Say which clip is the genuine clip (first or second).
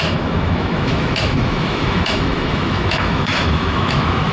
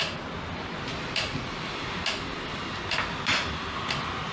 second